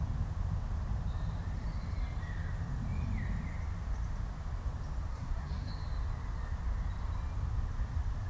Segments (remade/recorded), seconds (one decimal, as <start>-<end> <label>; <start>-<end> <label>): 0.0-5.1 recorded; 5.1-5.7 remade; 5.7-8.3 recorded